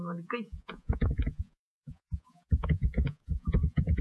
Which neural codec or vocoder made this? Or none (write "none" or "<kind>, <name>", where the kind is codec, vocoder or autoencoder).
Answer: vocoder, Vocos